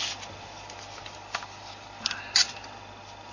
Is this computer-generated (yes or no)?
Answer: no